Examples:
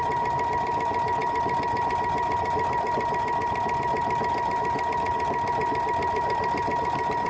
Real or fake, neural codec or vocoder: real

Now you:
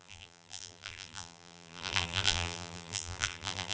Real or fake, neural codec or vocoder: fake, vocoder, BigVGAN v2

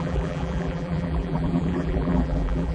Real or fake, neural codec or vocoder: fake, vocoder, BigVGAN v2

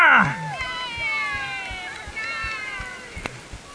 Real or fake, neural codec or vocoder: real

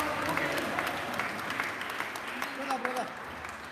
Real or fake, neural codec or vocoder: real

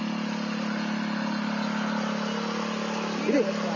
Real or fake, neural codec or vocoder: real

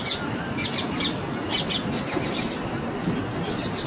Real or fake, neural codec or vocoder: real